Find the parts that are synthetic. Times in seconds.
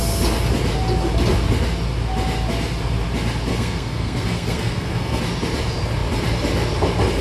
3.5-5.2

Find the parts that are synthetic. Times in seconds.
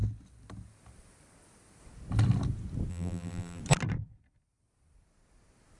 2.9-3.6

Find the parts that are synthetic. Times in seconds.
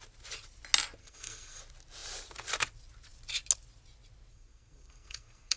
1.0-1.6; 4.3-5.6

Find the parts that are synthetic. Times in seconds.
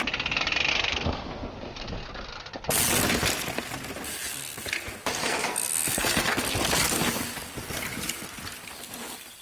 0.7-1.5; 5.2-6.4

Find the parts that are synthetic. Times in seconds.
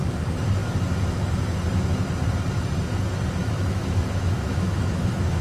3.4-5.4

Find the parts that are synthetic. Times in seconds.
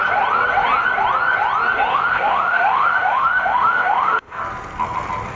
1.9-4.4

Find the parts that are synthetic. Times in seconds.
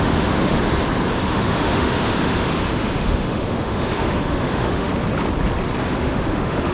0.0-0.6; 1.2-4.9; 5.8-6.7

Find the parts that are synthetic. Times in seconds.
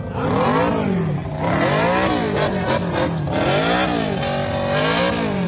none